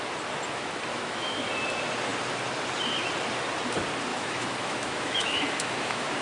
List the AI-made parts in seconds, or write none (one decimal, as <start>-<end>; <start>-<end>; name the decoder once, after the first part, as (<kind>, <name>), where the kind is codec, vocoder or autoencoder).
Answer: 0.9-1.5 (autoencoder, DAC-VAE); 4.1-6.2

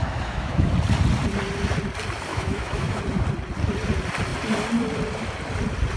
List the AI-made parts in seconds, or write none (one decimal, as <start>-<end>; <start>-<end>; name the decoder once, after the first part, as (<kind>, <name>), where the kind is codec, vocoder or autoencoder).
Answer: 0.0-0.7 (autoencoder, DAC-VAE); 2.3-3.0